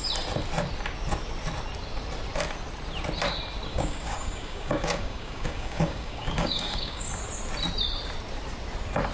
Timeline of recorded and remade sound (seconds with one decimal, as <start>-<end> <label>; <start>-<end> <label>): 0.0-3.7 recorded; 3.7-7.1 remade; 7.1-9.1 recorded